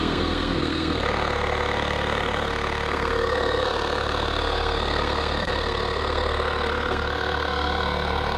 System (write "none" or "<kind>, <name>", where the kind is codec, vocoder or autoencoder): codec, SNAC